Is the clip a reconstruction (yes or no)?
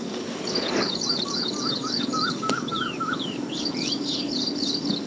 yes